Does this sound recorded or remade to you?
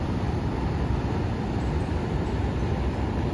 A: recorded